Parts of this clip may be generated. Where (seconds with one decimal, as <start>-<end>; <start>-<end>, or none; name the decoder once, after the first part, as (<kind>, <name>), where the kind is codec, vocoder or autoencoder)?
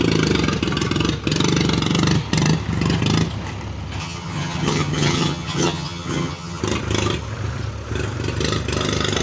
4.0-6.6 (vocoder, HiFi-GAN)